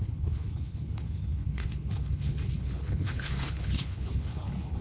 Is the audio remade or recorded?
remade